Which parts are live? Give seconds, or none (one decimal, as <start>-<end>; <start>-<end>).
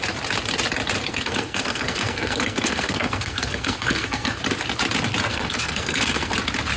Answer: 0.0-1.1; 4.4-5.3; 6.3-6.8